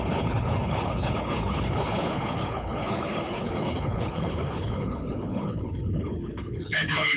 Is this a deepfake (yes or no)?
yes